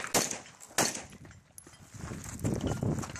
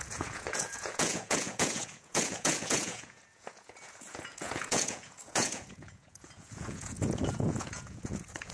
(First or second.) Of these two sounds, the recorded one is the first